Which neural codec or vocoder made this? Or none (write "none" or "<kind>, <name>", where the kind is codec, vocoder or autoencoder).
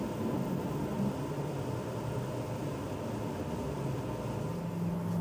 none